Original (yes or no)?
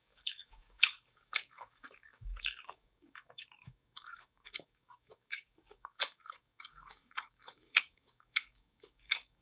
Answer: no